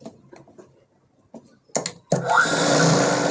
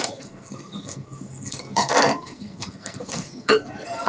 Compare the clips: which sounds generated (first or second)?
second